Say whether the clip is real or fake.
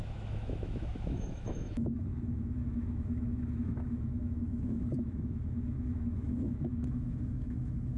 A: fake